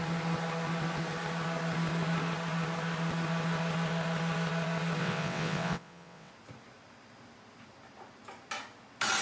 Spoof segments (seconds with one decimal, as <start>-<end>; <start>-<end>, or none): 5.0-6.3